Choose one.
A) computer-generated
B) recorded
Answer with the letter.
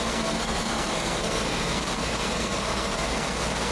A